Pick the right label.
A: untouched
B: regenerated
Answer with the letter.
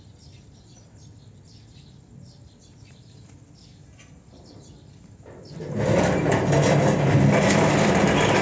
A